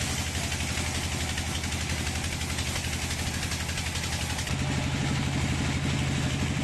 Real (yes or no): yes